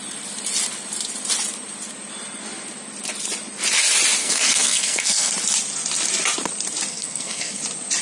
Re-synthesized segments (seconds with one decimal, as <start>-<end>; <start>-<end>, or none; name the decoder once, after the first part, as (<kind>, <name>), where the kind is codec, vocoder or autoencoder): 4.2-5.3 (codec, SNAC); 6.9-7.6